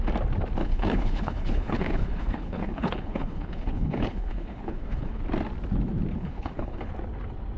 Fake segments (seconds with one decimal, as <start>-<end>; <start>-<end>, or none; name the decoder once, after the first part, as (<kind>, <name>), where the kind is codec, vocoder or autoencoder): 0.6-5.2 (codec, HILCodec); 6.1-6.9